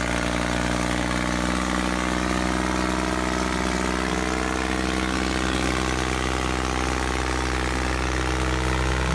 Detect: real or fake real